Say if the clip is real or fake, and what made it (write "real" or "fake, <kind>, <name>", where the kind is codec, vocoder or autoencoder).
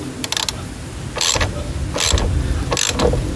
real